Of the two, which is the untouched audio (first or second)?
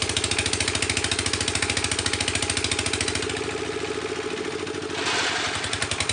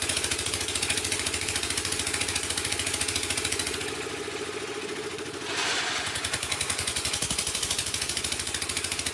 first